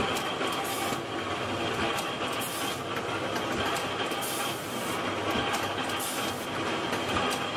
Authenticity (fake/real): real